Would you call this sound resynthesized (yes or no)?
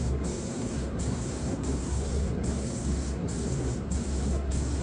yes